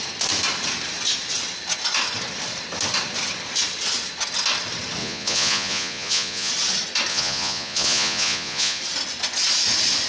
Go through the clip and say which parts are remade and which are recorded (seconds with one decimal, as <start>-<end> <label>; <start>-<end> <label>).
0.0-5.0 recorded; 5.0-6.5 remade; 6.5-7.1 recorded; 7.1-8.8 remade; 8.8-10.1 recorded

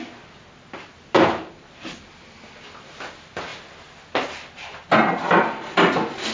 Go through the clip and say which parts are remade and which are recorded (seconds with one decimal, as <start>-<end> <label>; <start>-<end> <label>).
0.0-6.3 recorded

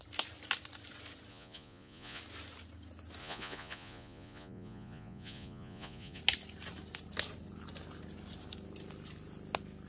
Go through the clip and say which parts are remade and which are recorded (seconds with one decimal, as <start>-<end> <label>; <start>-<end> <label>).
0.0-1.3 recorded; 1.3-2.2 remade; 2.2-3.2 recorded; 3.2-6.2 remade; 6.2-9.9 recorded